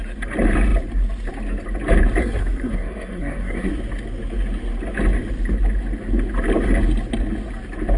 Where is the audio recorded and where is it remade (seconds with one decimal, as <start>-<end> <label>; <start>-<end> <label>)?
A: 0.0-2.2 recorded; 2.2-3.7 remade; 3.7-8.0 recorded